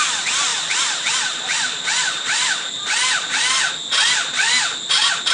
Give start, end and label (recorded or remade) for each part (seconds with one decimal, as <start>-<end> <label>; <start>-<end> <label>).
0.0-0.5 recorded; 0.5-3.7 remade; 3.7-5.3 recorded